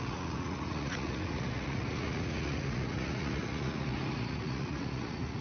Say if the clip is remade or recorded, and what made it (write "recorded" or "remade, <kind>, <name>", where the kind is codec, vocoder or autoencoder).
remade, vocoder, Vocos